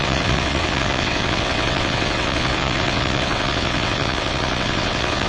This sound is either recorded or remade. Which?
remade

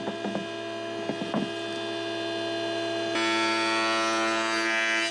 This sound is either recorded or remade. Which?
recorded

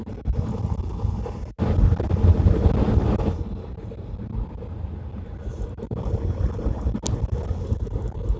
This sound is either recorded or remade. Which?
recorded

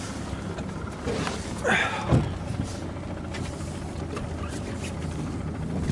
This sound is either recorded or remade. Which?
recorded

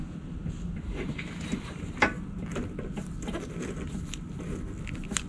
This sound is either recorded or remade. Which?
recorded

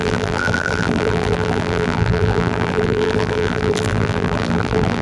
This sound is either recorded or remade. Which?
remade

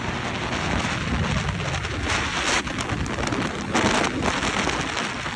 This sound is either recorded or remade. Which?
recorded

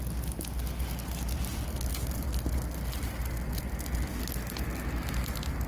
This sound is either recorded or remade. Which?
recorded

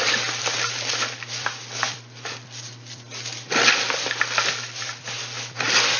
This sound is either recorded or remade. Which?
recorded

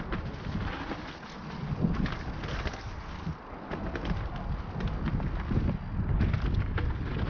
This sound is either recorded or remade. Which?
recorded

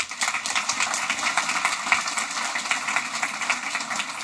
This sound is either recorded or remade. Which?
recorded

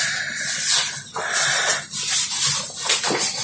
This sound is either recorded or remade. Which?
recorded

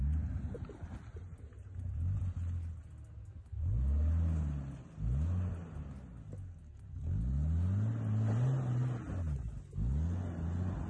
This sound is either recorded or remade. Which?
recorded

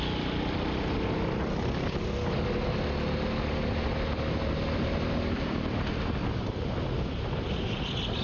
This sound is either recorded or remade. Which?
recorded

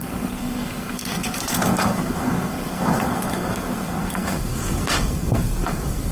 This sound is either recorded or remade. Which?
remade